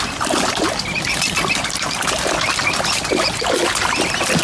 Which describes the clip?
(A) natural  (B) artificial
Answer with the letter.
A